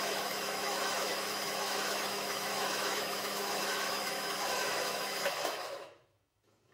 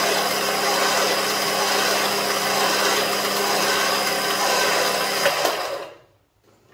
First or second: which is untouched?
second